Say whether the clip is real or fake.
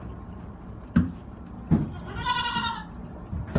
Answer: real